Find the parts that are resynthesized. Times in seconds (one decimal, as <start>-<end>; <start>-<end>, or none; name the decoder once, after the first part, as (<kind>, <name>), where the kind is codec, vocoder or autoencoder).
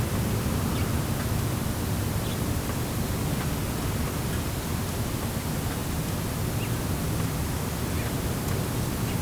none